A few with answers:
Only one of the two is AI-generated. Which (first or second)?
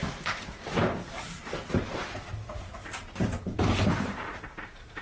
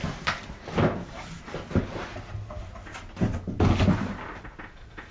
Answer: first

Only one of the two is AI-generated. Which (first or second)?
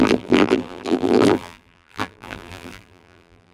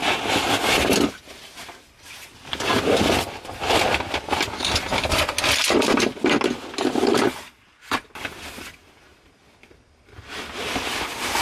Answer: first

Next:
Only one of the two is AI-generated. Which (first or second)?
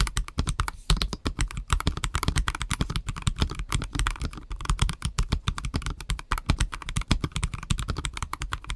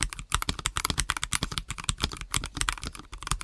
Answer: first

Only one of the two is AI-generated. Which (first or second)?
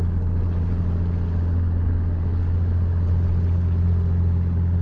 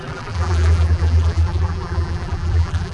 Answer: second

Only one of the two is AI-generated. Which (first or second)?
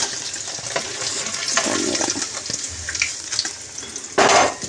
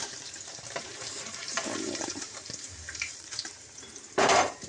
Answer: second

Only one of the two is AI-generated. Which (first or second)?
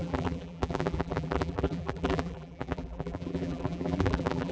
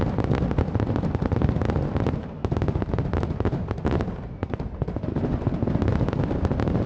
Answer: first